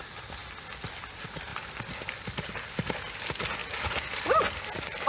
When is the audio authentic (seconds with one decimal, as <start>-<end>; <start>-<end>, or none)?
0.0-5.1